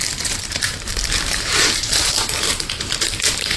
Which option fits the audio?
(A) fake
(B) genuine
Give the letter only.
A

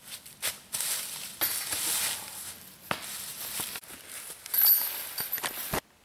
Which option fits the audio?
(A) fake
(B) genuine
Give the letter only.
B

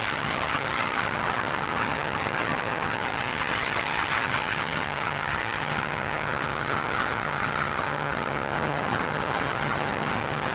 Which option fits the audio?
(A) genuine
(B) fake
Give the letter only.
B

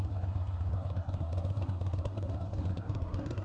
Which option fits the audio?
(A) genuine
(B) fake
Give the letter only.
B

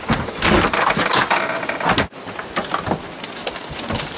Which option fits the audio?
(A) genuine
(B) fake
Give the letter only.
A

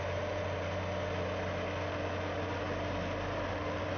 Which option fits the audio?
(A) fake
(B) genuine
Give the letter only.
B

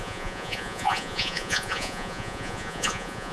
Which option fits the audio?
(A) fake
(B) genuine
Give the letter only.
A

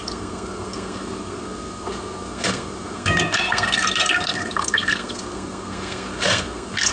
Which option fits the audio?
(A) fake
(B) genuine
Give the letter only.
A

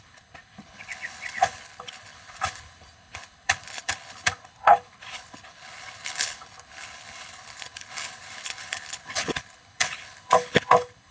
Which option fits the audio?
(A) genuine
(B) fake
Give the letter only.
B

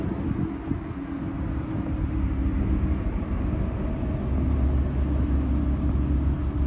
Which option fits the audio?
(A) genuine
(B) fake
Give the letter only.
A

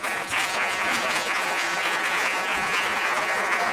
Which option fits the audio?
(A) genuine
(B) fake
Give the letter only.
B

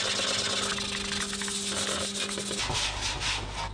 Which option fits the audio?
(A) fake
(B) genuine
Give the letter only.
B